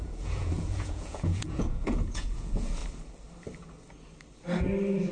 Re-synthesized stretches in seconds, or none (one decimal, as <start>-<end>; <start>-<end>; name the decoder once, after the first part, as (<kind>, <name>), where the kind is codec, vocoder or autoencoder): 0.0-2.8 (vocoder, Vocos)